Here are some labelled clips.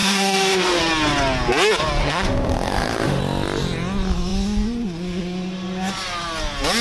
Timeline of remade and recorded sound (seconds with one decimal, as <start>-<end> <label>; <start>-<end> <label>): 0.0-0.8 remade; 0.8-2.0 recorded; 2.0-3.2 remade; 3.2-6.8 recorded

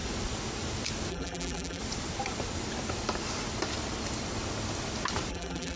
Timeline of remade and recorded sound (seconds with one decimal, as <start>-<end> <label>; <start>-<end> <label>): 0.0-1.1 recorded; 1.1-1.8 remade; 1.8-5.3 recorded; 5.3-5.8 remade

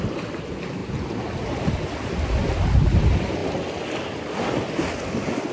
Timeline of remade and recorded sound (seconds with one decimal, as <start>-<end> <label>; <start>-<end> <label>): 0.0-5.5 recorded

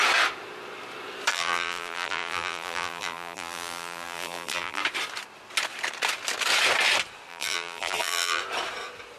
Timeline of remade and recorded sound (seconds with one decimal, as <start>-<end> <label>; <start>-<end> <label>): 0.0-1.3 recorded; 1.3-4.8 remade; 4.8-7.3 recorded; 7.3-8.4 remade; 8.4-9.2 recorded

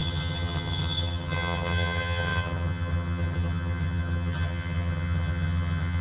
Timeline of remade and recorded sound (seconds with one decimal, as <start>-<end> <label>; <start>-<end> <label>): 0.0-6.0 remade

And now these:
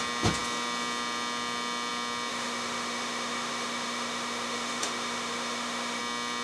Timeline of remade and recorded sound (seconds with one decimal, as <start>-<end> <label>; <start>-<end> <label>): 0.0-2.3 recorded; 2.3-6.0 remade; 6.0-6.4 recorded

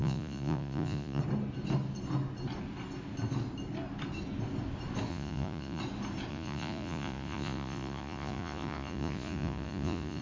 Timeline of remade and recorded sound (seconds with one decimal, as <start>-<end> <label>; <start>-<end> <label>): 0.0-1.2 remade; 1.2-5.1 recorded; 5.1-5.8 remade; 5.8-6.3 recorded; 6.3-10.2 remade